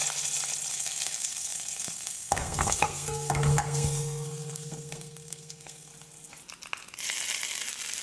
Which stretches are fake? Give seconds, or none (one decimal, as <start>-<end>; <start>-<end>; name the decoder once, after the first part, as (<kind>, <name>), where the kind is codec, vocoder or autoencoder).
0.7-5.9 (codec, SNAC)